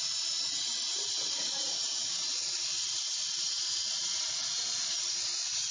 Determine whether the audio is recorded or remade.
remade